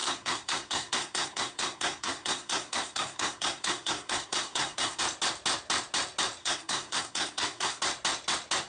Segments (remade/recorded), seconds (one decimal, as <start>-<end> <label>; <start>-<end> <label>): 0.0-5.0 remade; 5.0-6.4 recorded; 6.4-7.8 remade; 7.8-8.7 recorded